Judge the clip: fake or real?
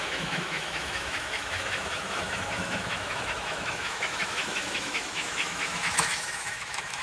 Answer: fake